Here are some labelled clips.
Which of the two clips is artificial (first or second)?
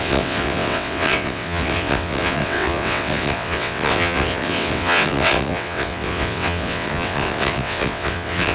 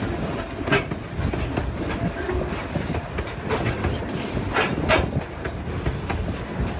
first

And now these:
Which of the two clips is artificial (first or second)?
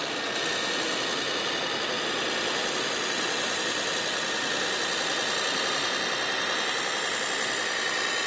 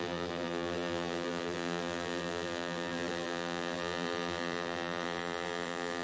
second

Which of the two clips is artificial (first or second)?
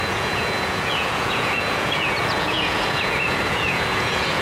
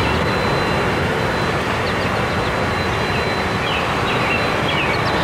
first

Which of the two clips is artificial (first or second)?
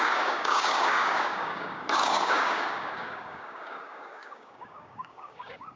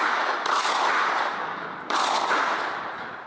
first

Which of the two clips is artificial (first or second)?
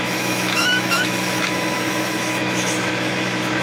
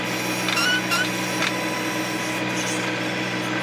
first